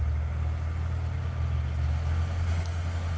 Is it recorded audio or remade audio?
recorded